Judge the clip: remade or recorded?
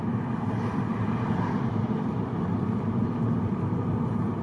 remade